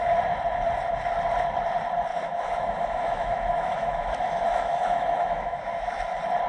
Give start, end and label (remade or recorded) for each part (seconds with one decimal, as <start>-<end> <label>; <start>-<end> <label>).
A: 0.0-2.1 recorded; 2.1-6.0 remade; 6.0-6.5 recorded